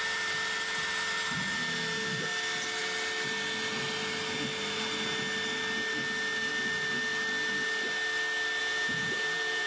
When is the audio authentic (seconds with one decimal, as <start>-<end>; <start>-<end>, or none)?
0.0-8.6